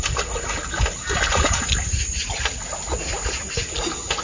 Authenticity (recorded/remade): recorded